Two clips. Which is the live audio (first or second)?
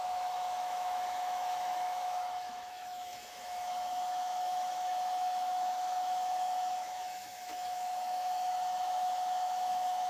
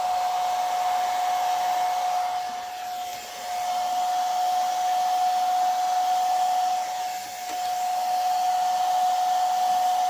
second